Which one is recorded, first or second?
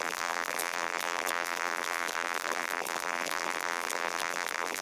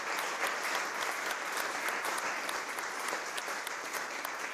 second